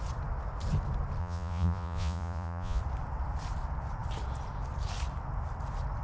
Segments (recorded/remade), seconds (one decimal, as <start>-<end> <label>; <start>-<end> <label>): 0.0-1.2 recorded; 1.2-2.8 remade; 2.8-6.0 recorded